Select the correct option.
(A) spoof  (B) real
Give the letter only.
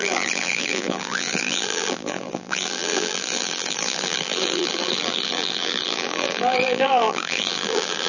A